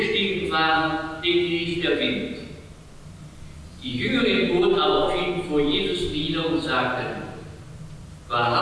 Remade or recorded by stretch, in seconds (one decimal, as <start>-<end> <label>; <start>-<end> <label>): 0.0-8.6 recorded

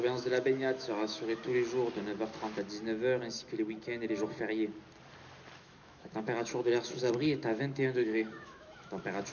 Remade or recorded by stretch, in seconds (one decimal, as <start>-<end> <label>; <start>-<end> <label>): 0.0-1.4 remade; 1.4-5.6 recorded; 5.6-9.3 remade

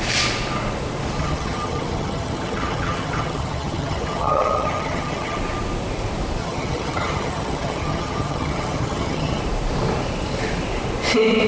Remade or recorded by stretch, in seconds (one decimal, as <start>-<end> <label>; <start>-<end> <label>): 0.0-1.2 recorded; 1.2-5.4 remade; 5.4-6.4 recorded; 6.4-9.4 remade; 9.4-11.5 recorded

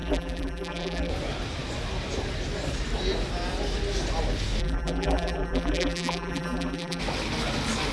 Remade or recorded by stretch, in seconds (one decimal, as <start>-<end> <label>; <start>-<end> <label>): 0.0-1.1 remade; 1.1-4.6 recorded; 4.6-7.0 remade; 7.0-7.9 recorded

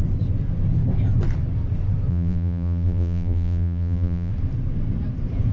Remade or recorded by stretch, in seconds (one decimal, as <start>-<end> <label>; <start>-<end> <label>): 0.0-2.1 recorded; 2.1-4.3 remade; 4.3-5.5 recorded